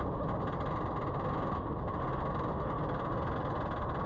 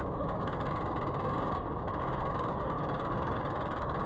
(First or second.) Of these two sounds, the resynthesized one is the second